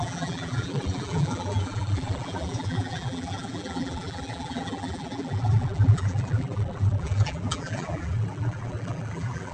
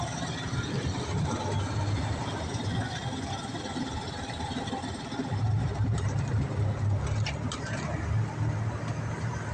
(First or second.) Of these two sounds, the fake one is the first